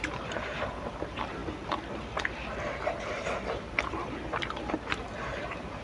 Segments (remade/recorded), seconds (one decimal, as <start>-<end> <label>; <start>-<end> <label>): 0.0-1.4 remade; 1.4-2.7 recorded; 2.7-5.8 remade